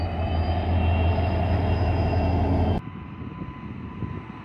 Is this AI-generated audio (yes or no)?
no